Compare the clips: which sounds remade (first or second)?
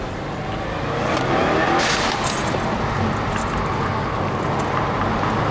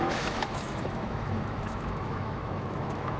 second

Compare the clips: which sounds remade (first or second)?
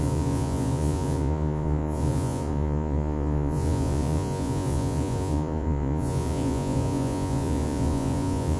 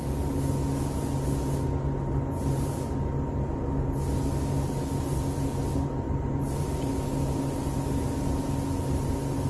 first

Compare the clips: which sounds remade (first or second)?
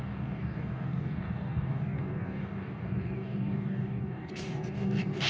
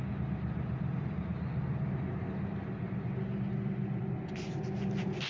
first